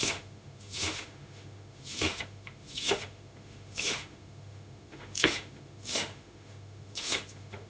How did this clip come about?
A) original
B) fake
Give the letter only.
B